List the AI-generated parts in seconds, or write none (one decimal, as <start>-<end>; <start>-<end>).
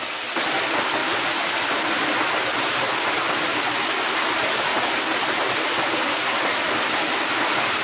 1.0-1.6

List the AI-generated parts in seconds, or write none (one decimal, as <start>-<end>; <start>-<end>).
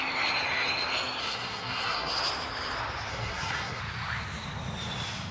1.2-2.1; 3.1-3.8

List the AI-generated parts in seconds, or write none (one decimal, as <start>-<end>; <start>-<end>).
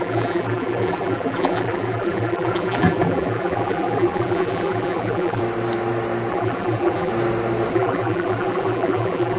0.0-5.4; 6.3-7.1; 7.7-9.4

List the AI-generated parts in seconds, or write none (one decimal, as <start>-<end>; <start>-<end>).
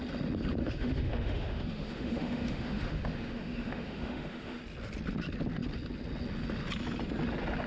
0.6-4.6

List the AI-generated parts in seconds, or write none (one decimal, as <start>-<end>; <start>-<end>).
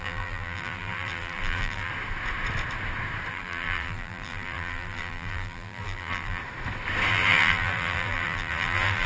0.0-1.9; 3.3-6.4; 7.1-9.1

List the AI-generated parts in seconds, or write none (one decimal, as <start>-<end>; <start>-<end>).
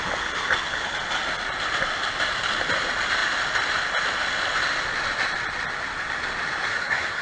6.7-7.2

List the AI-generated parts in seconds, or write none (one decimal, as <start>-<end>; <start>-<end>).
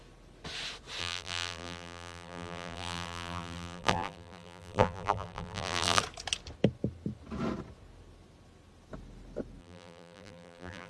1.0-6.0; 9.6-10.9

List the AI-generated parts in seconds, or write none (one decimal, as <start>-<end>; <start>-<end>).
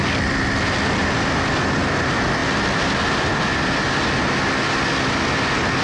none